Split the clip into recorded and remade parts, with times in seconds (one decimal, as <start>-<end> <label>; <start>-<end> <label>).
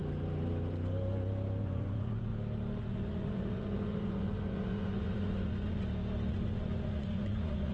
0.0-1.6 recorded; 1.6-2.3 remade; 2.3-2.8 recorded; 2.8-5.8 remade; 5.8-6.3 recorded; 6.3-7.7 remade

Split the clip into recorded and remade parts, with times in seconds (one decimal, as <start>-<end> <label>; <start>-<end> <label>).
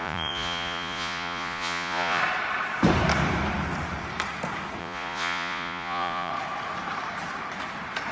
0.0-2.2 remade; 2.2-4.8 recorded; 4.8-6.3 remade; 6.3-8.1 recorded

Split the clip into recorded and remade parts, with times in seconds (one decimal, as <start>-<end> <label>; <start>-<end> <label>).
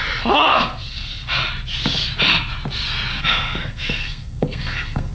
0.0-0.5 recorded; 0.5-1.4 remade; 1.4-3.1 recorded; 3.1-5.1 remade